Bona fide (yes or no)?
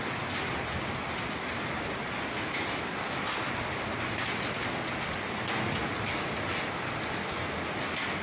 yes